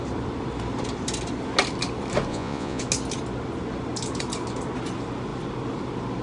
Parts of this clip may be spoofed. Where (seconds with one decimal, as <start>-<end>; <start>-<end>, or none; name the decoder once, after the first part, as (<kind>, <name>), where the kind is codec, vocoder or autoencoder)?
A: 2.3-2.8 (vocoder, Vocos)

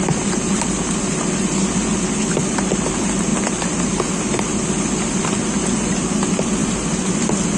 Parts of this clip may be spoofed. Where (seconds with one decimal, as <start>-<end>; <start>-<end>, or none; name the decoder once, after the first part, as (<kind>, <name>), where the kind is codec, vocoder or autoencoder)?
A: none

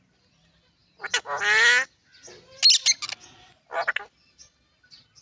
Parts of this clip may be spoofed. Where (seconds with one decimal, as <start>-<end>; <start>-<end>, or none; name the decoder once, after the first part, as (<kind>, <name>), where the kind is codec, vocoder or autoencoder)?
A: none